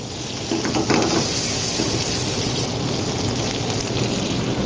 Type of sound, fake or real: real